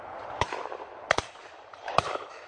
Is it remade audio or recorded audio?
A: remade